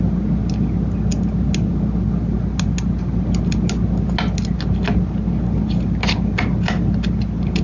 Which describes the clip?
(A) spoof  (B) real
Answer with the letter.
B